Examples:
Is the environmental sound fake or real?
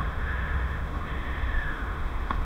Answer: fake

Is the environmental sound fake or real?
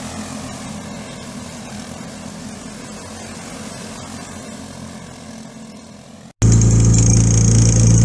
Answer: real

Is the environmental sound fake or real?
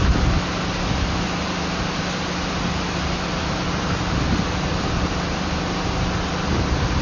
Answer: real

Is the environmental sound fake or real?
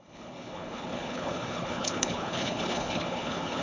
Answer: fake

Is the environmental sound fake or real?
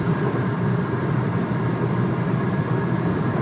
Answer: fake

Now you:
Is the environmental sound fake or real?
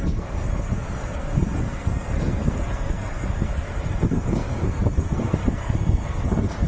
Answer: fake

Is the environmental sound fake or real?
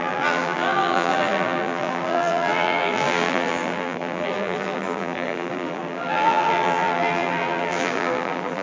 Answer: fake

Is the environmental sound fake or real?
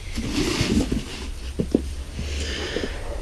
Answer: real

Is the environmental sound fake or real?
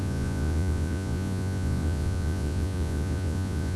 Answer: fake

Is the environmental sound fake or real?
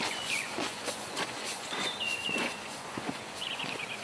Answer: fake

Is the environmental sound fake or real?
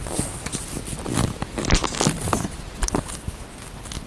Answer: real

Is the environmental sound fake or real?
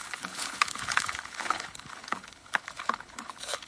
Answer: fake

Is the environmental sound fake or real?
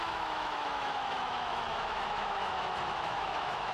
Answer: fake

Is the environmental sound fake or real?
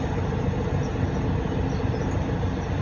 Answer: real